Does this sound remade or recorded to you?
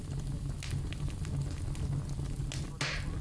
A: recorded